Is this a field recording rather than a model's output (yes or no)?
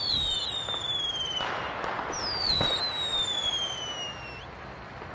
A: yes